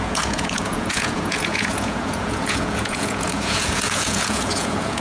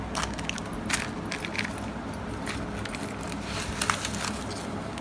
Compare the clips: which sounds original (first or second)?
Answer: second